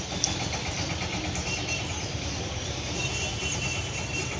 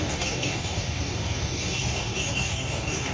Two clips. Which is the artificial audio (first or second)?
second